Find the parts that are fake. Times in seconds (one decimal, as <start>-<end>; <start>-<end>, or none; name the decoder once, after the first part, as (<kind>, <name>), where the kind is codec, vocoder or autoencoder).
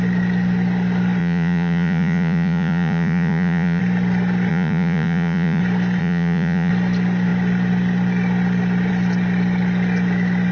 1.2-3.8 (vocoder, Vocos); 4.5-5.6; 6.0-6.7